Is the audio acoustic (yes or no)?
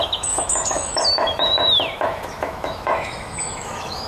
no